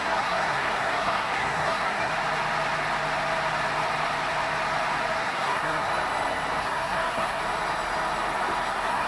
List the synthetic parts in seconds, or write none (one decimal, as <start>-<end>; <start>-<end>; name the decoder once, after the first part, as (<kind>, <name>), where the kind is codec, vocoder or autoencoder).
0.0-2.1 (codec, SNAC); 5.2-5.9; 6.6-7.4; 8.7-9.1